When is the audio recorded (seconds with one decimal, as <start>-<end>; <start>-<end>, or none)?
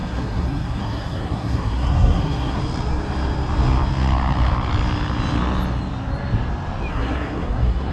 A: 2.6-6.9